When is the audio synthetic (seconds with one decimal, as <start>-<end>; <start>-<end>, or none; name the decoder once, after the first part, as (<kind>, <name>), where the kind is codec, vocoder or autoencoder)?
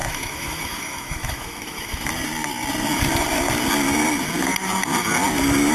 0.0-2.1 (autoencoder, DAC-VAE)